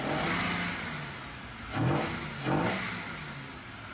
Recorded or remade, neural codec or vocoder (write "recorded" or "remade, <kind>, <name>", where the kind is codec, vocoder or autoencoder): recorded